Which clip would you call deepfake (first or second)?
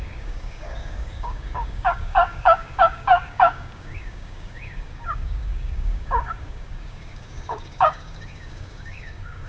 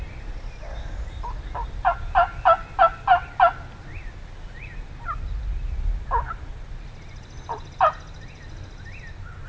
first